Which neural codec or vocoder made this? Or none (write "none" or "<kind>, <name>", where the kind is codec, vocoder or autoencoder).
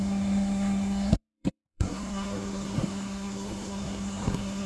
codec, SNAC